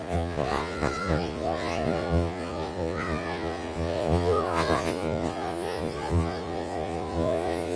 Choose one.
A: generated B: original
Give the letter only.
A